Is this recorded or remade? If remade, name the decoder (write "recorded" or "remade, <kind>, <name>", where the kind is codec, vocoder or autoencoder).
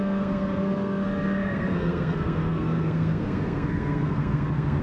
remade, codec, SNAC